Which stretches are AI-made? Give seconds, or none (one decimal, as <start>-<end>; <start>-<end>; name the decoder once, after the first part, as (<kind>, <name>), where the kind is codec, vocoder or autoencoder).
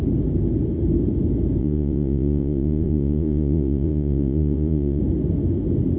1.6-5.0 (vocoder, Vocos)